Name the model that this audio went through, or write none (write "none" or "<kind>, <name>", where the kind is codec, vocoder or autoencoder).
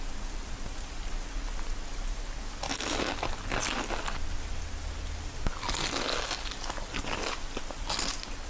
none